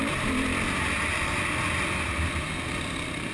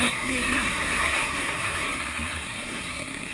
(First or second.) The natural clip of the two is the first